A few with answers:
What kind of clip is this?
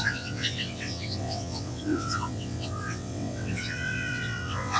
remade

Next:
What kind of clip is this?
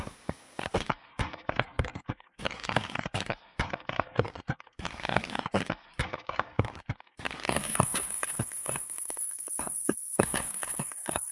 remade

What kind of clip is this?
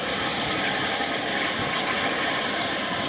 recorded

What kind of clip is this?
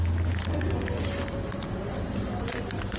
recorded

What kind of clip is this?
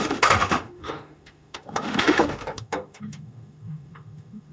remade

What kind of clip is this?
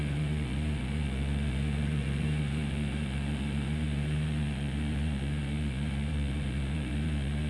remade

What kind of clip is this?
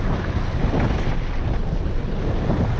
recorded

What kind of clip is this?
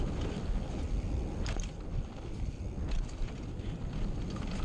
recorded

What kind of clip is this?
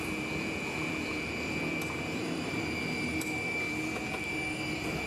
remade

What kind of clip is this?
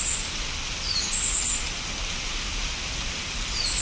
recorded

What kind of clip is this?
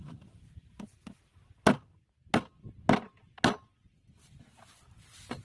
recorded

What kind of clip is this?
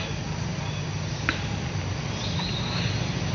recorded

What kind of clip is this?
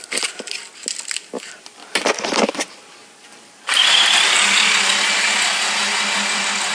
recorded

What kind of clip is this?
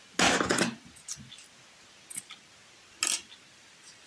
recorded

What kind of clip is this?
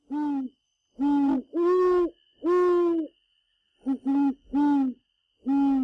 recorded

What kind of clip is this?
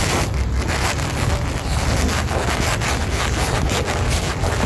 recorded